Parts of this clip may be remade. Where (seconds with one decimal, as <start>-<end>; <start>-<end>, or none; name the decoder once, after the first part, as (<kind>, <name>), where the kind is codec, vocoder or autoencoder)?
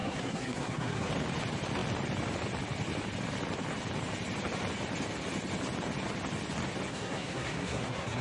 0.0-1.1 (codec, SNAC); 6.9-8.2